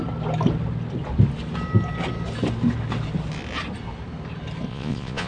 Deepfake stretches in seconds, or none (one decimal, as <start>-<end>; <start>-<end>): 4.7-5.3